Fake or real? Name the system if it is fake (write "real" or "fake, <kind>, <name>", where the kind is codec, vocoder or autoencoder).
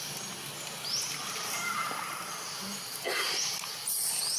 real